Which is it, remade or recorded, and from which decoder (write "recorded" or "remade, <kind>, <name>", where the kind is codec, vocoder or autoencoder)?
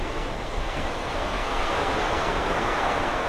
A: remade, codec, SNAC